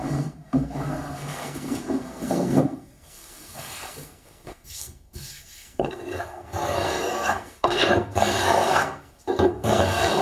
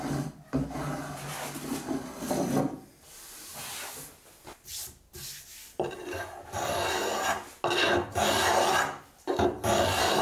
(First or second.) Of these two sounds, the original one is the second